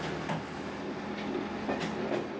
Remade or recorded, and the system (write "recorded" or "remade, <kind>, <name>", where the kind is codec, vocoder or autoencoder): recorded